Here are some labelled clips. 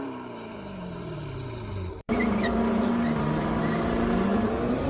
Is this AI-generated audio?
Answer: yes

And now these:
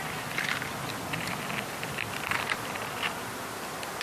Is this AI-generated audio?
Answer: no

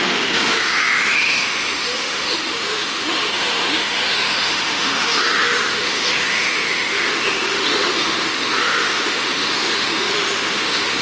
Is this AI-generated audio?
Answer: yes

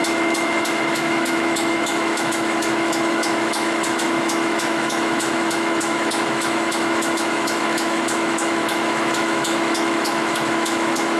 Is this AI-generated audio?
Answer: yes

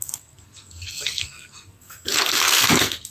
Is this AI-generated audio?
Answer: yes